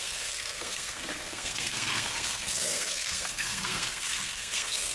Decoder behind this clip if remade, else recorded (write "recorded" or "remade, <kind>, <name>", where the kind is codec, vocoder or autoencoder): remade, codec, SNAC